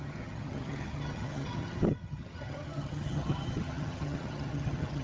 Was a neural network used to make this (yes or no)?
yes